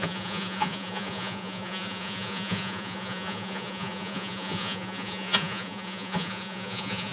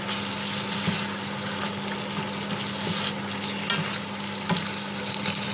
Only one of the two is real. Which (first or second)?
second